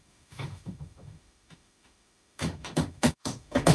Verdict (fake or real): fake